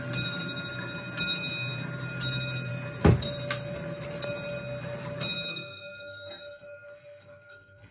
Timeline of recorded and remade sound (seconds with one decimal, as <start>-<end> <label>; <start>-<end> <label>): 0.0-5.5 recorded; 5.5-7.9 remade